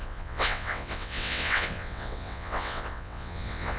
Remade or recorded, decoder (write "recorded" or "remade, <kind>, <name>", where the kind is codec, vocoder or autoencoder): remade, vocoder, WaveNeXt